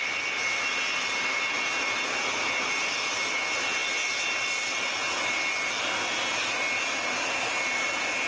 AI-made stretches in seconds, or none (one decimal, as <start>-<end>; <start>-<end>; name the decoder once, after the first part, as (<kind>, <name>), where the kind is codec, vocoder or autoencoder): none